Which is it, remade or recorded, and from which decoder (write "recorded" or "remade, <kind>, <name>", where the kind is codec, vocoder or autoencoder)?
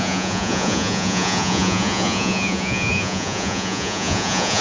remade, vocoder, Vocos